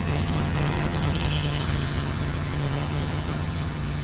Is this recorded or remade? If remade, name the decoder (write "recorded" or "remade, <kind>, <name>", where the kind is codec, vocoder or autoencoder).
remade, vocoder, HiFi-GAN